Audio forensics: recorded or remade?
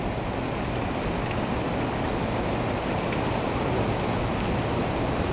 recorded